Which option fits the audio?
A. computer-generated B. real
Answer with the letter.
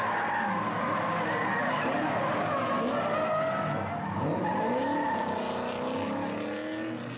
B